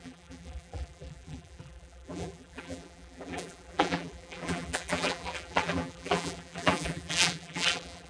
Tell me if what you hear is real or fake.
fake